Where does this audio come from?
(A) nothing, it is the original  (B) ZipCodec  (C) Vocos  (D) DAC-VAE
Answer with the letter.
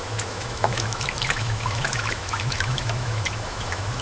D